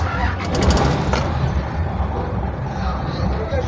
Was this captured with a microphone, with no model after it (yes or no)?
yes